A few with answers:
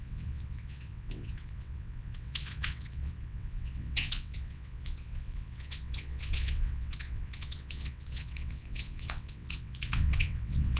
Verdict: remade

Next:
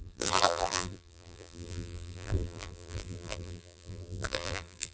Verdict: remade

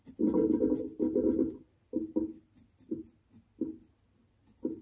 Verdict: recorded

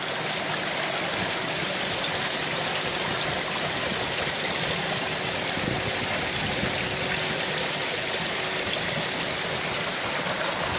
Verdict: recorded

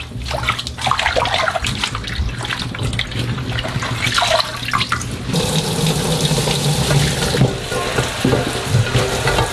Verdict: recorded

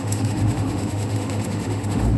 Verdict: remade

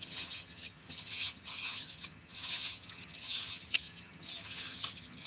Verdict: remade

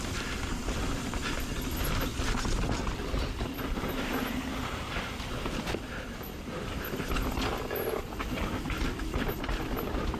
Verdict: recorded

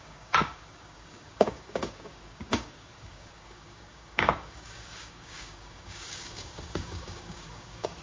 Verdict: remade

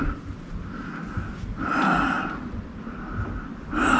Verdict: recorded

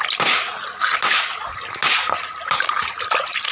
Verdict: recorded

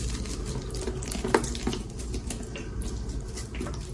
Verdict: recorded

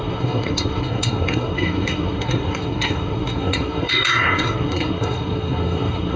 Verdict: remade